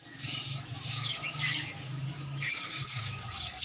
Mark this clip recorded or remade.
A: remade